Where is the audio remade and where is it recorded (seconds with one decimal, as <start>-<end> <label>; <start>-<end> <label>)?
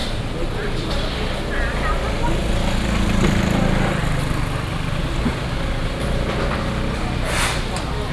0.0-8.1 recorded